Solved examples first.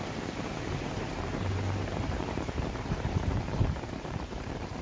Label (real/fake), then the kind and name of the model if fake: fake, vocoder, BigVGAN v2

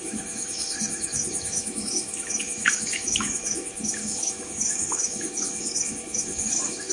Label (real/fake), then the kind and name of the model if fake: fake, autoencoder, DAC-VAE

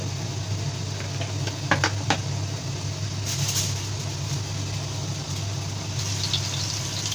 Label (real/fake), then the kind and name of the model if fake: real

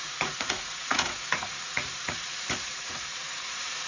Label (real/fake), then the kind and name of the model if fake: fake, vocoder, Vocos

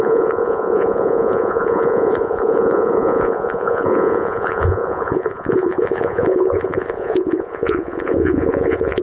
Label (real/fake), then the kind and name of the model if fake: fake, vocoder, Vocos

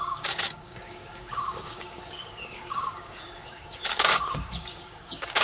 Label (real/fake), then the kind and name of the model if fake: fake, codec, DAC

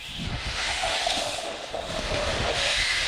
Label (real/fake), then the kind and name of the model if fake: fake, autoencoder, DAC-VAE